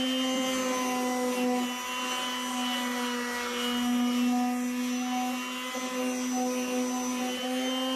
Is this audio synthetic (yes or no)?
no